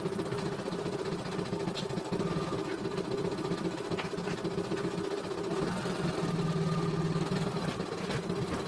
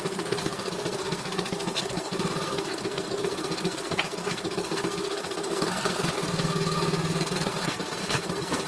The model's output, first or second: second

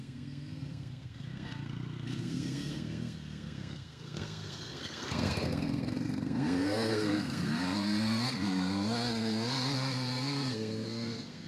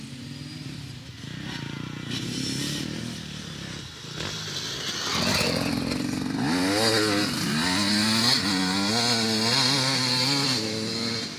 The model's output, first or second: first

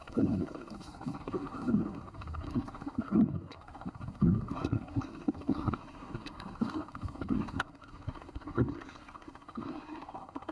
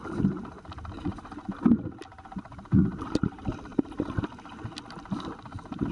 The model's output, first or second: first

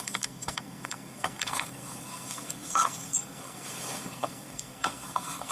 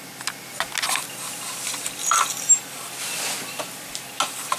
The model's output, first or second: first